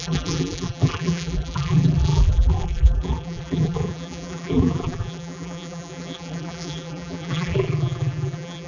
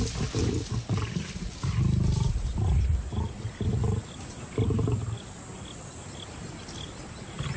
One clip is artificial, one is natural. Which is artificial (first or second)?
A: first